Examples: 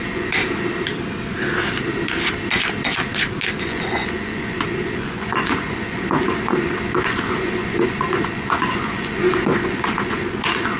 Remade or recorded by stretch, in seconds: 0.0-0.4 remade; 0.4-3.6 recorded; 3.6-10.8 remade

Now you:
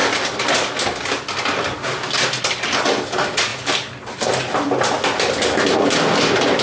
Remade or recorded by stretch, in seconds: 0.0-6.6 recorded

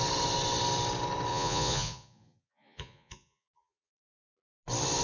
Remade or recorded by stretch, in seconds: 0.0-1.3 recorded; 1.3-4.3 remade; 4.3-5.0 recorded

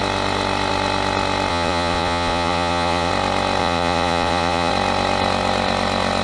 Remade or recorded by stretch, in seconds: 0.0-1.5 recorded; 1.5-3.1 remade; 3.1-3.6 recorded; 3.6-4.7 remade; 4.7-6.2 recorded

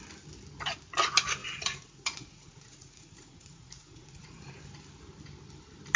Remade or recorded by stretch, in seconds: 0.0-1.4 recorded; 1.4-4.5 remade; 4.5-6.0 recorded

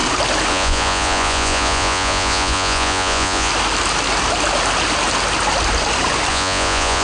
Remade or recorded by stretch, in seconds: 0.0-0.5 recorded; 0.5-3.5 remade; 3.5-6.3 recorded; 6.3-7.0 remade